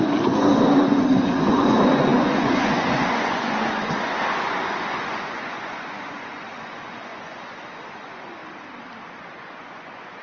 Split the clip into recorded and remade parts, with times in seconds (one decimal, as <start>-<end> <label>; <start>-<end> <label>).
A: 0.0-8.4 remade; 8.4-9.2 recorded; 9.2-10.2 remade